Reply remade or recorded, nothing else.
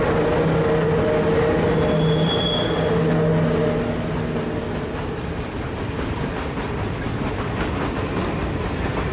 recorded